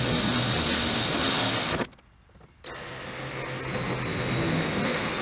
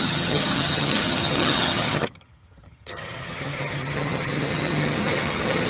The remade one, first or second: second